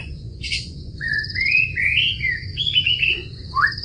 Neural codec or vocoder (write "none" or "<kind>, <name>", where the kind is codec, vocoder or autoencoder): vocoder, Vocos